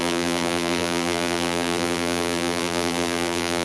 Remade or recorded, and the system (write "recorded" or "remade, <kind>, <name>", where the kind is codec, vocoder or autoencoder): remade, vocoder, BigVGAN v2